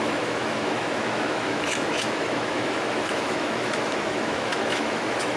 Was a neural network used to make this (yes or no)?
yes